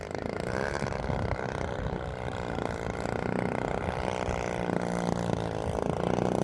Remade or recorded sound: recorded